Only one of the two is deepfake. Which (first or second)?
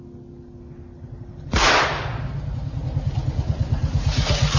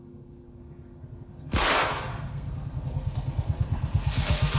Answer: second